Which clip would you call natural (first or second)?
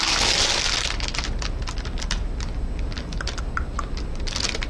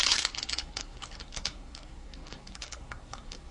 first